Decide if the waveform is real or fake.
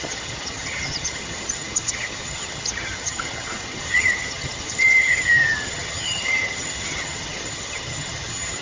fake